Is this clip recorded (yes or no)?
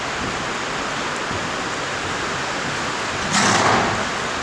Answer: yes